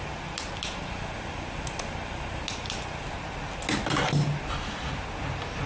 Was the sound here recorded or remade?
recorded